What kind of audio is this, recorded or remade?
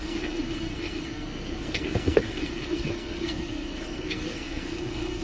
remade